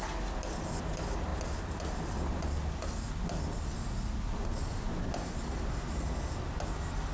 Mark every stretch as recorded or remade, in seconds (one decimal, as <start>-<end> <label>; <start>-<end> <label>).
0.0-7.1 recorded